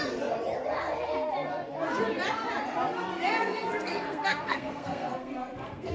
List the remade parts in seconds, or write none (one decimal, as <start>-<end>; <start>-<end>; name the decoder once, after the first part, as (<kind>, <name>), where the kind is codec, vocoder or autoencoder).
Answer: 3.1-5.9 (codec, SNAC)